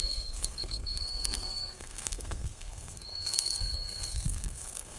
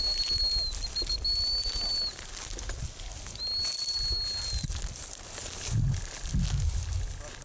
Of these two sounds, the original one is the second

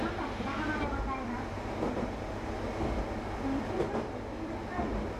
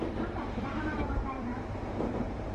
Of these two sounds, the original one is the first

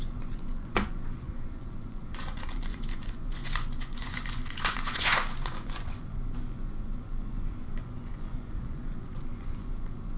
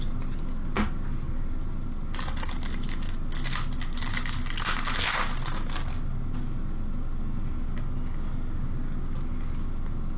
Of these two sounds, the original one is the second